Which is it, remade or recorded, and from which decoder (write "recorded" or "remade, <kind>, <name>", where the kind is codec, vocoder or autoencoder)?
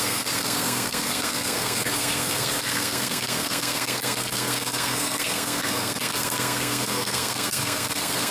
remade, codec, SNAC